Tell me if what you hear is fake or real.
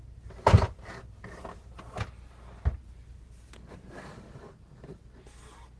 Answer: real